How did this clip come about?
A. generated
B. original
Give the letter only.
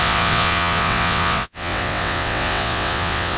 A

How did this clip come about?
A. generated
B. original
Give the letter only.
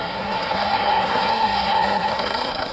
A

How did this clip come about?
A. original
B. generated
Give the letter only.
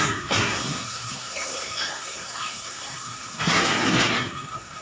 B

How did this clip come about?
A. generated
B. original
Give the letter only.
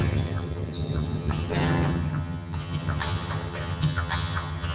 A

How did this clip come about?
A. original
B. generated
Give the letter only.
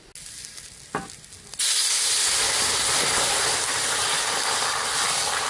A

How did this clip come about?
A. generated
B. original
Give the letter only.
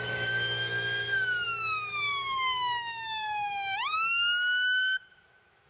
A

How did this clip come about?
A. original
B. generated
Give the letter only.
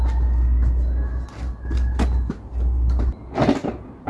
A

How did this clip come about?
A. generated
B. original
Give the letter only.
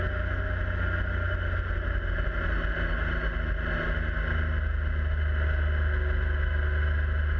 B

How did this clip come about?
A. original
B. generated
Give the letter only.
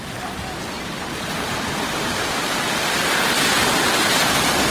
A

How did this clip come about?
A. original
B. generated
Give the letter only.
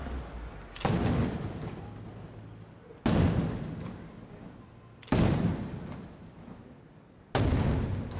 A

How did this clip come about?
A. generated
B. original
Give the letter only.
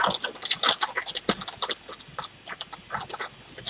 B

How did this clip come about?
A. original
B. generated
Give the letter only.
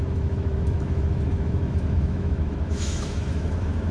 B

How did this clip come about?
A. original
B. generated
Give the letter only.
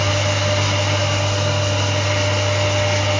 A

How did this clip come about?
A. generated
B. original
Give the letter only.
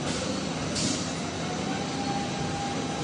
B